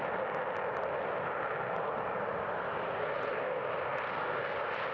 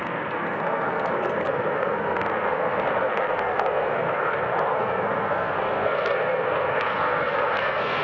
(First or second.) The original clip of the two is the first